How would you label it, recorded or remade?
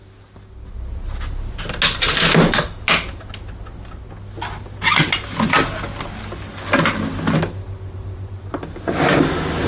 recorded